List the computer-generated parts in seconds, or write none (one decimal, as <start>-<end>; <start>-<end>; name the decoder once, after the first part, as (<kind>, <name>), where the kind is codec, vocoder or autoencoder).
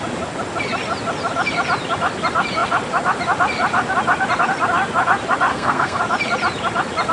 5.5-6.0 (codec, SNAC)